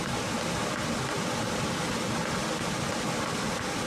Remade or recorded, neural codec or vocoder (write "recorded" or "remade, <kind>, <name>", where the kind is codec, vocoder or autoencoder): recorded